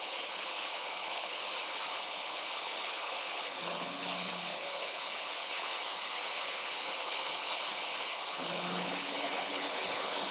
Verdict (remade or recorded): remade